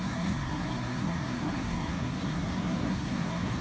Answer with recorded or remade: remade